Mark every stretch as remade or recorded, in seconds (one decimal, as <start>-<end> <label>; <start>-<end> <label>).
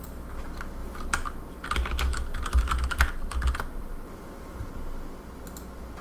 0.0-3.7 recorded; 3.7-4.7 remade; 4.7-6.0 recorded